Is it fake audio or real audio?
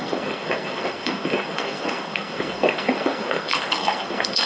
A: fake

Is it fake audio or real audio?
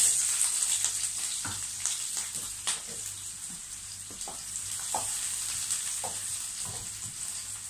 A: real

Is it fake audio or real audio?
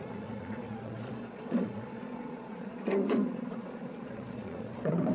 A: fake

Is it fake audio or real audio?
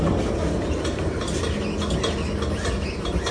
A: real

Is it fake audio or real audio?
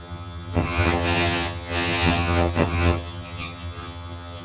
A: fake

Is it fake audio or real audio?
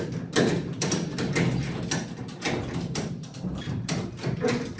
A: real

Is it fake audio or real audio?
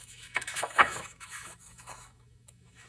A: fake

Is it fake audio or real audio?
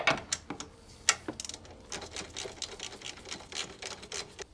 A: real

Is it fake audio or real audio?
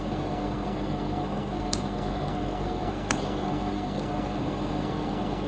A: fake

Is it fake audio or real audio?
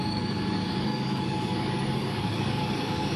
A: fake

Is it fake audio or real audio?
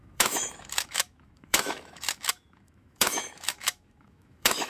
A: fake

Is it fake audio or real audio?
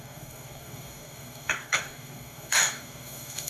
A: fake